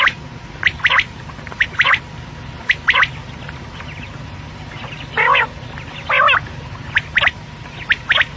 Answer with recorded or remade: recorded